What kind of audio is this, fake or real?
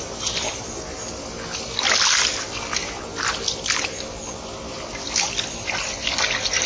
real